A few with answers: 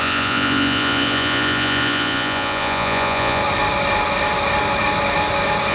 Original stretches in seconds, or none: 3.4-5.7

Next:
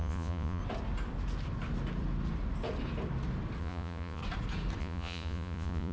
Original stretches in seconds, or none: 0.6-3.6; 4.2-4.8

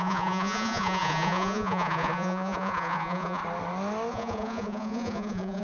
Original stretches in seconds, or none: 3.4-4.1

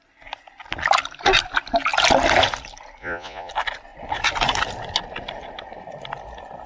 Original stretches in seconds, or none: 0.0-3.0; 3.5-6.7

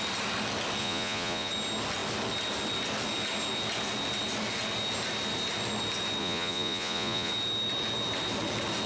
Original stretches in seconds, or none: 0.0-0.8; 1.5-6.2; 7.3-8.9

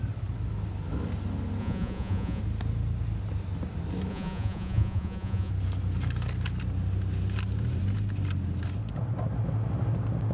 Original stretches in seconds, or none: 0.0-1.6; 2.4-4.1; 5.5-10.3

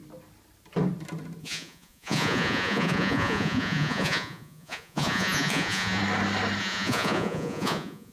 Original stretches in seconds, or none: 0.0-1.4; 6.0-6.6